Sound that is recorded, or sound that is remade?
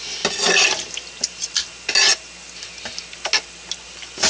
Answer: recorded